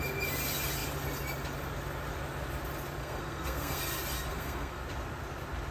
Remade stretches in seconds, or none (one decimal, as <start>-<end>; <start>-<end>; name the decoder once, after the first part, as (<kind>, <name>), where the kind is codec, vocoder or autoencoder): 3.0-3.8 (codec, SNAC); 4.3-4.8